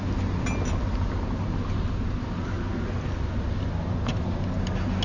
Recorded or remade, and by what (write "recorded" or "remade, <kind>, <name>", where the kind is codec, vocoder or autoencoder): recorded